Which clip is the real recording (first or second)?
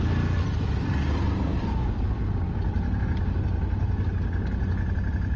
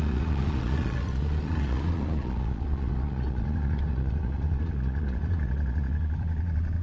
first